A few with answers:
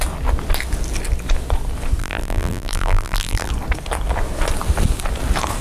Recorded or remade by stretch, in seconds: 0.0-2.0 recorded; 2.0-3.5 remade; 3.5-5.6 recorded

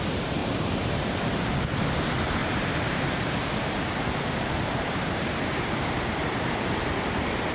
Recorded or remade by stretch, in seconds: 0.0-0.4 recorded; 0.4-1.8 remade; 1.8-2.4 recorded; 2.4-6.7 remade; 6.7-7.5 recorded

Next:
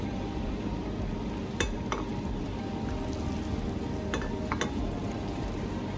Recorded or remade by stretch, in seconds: 0.0-0.8 remade; 0.8-1.4 recorded; 1.4-2.1 remade; 2.1-4.7 recorded; 4.7-6.0 remade

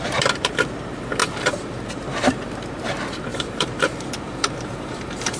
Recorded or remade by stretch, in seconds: 0.0-1.2 recorded; 1.2-1.8 remade; 1.8-3.3 recorded; 3.3-5.4 remade

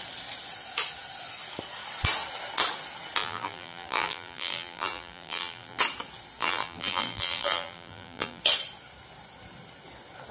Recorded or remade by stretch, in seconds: 0.0-3.2 recorded; 3.2-5.8 remade; 5.8-6.4 recorded; 6.4-8.4 remade; 8.4-10.3 recorded

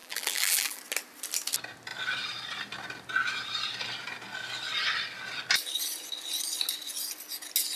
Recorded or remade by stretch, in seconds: 0.0-0.8 remade; 0.8-7.8 recorded

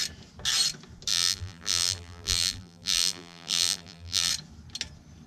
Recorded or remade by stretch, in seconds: 0.0-1.1 recorded; 1.1-4.3 remade; 4.3-5.3 recorded

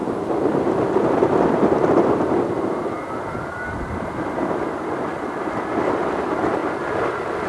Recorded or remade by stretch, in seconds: 0.0-1.2 recorded; 1.2-6.6 remade; 6.6-7.1 recorded; 7.1-7.5 remade